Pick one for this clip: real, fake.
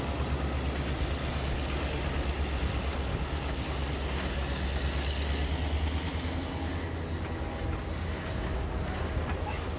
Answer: real